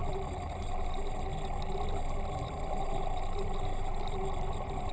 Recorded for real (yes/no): yes